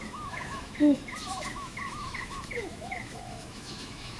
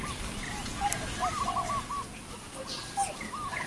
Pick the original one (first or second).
second